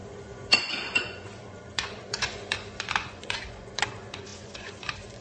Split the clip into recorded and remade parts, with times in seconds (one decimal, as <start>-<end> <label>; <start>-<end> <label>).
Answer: 0.0-5.2 remade